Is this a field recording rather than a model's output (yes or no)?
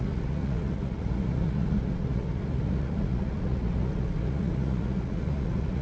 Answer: no